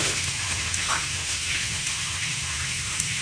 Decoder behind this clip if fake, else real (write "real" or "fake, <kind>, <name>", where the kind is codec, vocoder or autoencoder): fake, autoencoder, DAC-VAE